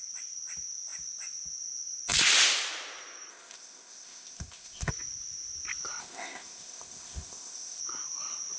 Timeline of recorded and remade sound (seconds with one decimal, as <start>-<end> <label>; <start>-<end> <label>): 0.0-3.3 recorded; 3.3-4.9 remade; 4.9-6.0 recorded; 6.0-7.8 remade; 7.8-8.6 recorded